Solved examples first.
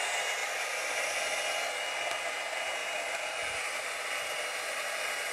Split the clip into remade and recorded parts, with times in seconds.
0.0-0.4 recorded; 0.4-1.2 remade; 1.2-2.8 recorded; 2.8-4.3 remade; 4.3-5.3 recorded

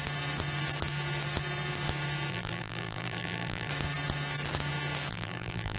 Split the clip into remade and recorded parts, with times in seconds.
0.0-2.3 recorded; 2.3-3.7 remade; 3.7-5.1 recorded; 5.1-5.8 remade